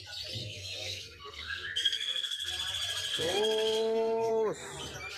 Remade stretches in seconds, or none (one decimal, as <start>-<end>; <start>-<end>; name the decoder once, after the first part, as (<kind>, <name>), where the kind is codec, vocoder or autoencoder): 0.4-2.5 (codec, SNAC); 3.1-4.3